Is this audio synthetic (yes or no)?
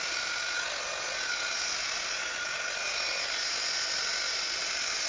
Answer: no